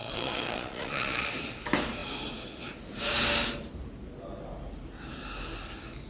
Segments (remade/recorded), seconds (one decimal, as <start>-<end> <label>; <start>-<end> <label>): 0.0-1.3 remade; 1.3-6.1 recorded